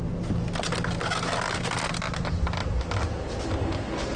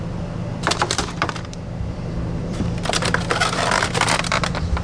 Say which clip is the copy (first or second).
second